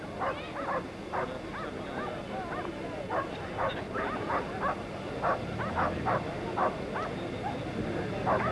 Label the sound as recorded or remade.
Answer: recorded